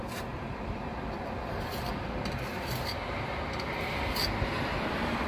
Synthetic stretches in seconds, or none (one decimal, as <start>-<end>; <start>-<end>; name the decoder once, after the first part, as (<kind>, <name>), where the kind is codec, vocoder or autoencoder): 0.0-2.5 (vocoder, BigVGAN v2); 4.1-5.3